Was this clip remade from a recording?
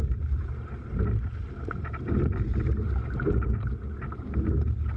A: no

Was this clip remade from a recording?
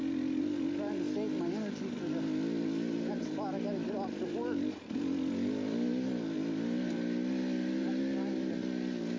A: no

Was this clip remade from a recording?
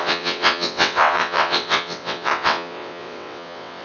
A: yes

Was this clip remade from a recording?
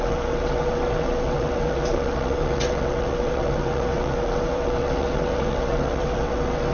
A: yes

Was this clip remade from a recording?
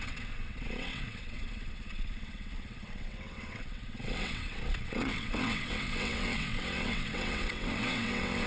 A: yes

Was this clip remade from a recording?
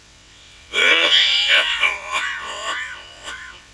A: yes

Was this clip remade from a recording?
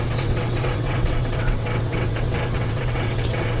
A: yes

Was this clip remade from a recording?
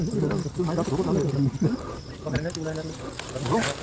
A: no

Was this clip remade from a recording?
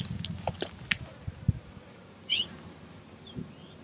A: no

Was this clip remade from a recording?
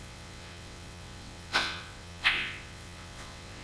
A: yes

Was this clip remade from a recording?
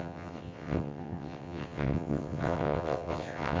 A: yes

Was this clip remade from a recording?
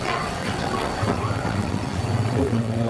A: yes